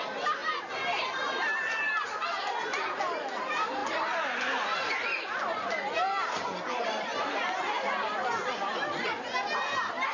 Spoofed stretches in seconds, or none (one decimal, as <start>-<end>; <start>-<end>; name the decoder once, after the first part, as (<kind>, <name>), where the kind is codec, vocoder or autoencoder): none